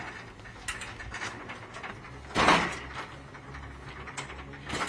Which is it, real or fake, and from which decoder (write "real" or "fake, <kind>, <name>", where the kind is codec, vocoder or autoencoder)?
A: real